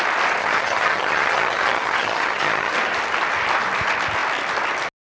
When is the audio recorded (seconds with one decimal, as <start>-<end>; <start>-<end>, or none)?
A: 0.0-0.4; 2.7-5.2